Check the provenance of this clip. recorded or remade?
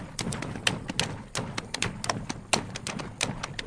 recorded